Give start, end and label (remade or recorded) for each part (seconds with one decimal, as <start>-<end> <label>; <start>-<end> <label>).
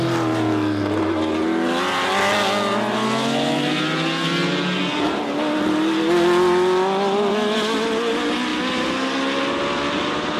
0.0-10.4 recorded